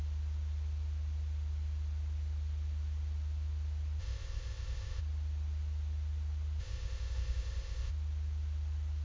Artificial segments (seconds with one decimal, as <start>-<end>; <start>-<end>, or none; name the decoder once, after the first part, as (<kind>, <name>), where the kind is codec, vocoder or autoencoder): 4.0-5.0 (codec, ZipCodec); 6.6-7.9